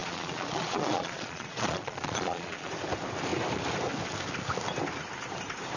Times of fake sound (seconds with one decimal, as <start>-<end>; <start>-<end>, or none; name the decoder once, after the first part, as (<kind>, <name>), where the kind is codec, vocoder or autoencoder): 0.0-2.7 (vocoder, Vocos)